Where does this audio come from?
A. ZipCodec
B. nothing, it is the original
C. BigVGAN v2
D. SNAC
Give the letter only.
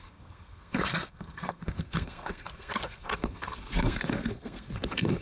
D